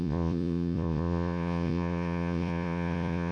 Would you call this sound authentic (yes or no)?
no